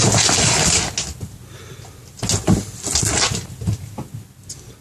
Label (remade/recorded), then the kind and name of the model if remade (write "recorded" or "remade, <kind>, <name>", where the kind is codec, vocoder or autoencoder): recorded